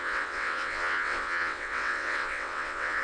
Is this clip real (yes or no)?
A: no